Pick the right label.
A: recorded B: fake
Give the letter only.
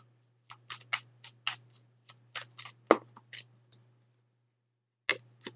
A